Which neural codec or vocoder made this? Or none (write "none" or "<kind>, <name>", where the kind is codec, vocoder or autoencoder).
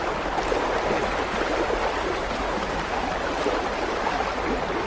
none